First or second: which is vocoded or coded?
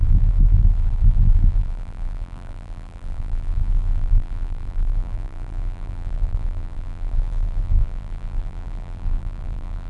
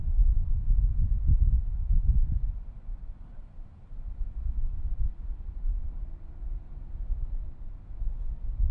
first